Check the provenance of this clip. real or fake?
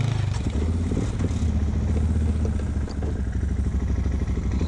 real